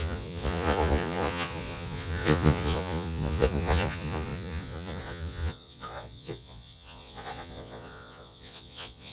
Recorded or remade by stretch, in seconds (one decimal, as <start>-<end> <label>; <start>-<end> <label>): 0.0-9.1 remade